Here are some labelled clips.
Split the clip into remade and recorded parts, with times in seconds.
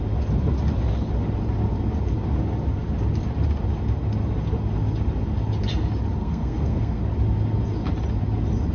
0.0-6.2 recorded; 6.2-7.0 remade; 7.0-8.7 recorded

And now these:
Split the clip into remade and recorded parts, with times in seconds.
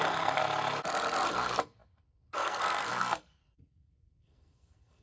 0.0-0.4 remade; 0.4-1.3 recorded; 1.3-5.0 remade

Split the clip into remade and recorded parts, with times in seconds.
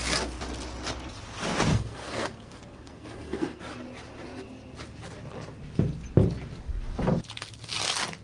0.0-1.7 recorded; 1.7-3.6 remade; 3.6-8.2 recorded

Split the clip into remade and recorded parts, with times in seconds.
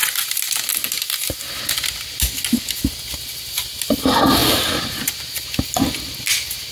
0.0-6.7 recorded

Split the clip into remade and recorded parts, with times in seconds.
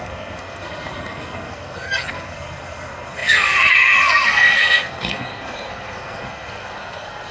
0.0-7.3 remade